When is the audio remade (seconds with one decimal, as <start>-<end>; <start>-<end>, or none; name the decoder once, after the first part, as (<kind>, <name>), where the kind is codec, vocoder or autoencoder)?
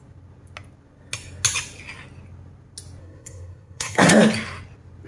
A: 3.0-4.1 (codec, SNAC)